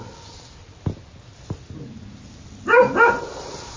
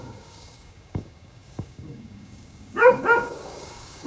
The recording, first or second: first